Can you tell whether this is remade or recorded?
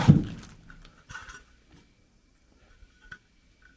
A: recorded